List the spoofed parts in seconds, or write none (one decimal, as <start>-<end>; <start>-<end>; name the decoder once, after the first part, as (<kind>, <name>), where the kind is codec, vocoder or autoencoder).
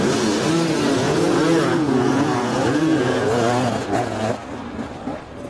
1.0-4.3 (vocoder, Vocos)